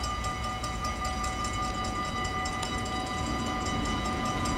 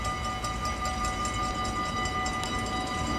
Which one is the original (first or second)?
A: second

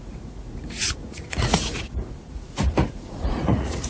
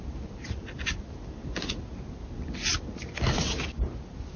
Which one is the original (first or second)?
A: second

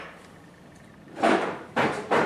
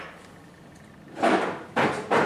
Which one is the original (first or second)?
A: second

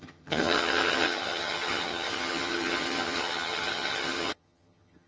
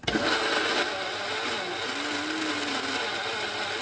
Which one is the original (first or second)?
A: second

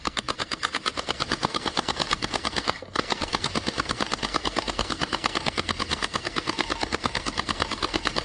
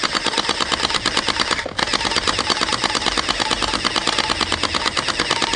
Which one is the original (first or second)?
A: second